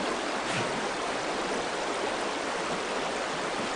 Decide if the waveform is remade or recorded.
recorded